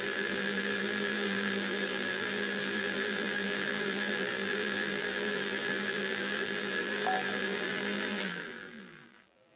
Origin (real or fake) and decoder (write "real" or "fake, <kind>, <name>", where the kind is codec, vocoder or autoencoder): fake, vocoder, BigVGAN v2